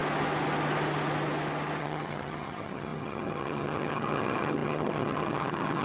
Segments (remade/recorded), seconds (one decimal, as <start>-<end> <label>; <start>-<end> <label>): 0.0-1.8 recorded; 1.8-5.8 remade